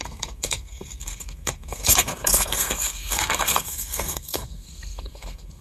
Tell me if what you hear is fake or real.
fake